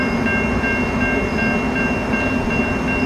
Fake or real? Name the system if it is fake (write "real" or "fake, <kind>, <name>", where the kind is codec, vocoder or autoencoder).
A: real